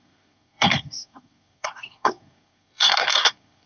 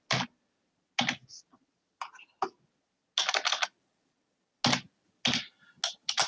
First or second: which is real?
second